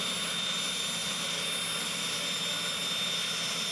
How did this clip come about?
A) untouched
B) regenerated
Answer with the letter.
A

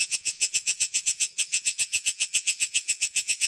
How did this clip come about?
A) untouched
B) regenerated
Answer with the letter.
B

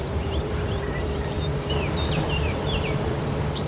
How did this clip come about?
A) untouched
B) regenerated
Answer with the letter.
B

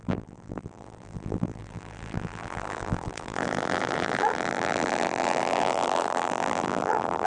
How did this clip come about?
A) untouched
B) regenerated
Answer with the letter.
B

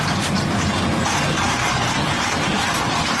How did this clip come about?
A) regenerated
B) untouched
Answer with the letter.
B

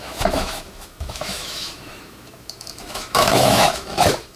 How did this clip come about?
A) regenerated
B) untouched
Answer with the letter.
A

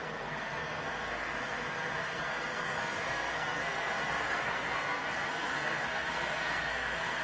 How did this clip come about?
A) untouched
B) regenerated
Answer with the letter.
B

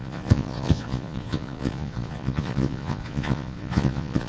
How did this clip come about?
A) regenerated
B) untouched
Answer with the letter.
A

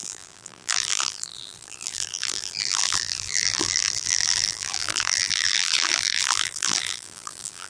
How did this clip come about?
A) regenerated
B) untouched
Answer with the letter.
A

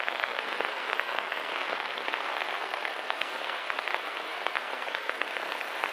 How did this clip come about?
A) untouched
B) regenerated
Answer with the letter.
B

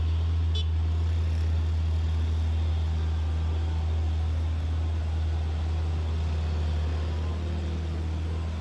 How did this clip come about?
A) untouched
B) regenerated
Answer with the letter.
A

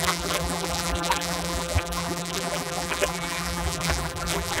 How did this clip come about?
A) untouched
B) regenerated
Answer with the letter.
B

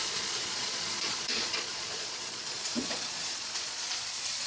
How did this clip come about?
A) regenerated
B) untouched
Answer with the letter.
A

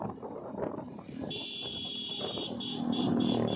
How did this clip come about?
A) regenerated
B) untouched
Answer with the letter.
A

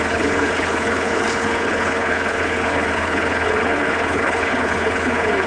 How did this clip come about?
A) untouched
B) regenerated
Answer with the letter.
B